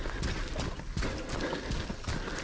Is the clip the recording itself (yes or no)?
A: yes